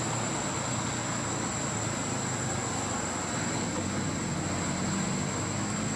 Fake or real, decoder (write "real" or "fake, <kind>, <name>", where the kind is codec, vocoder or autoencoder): real